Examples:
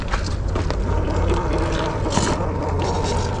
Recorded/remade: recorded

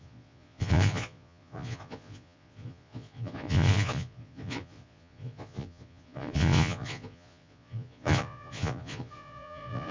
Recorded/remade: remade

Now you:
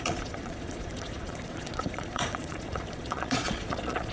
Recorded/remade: remade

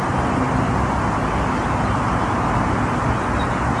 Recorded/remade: recorded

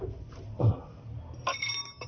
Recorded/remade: recorded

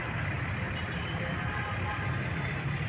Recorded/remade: recorded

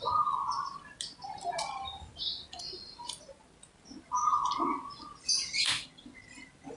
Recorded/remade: recorded